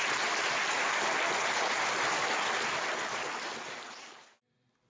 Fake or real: real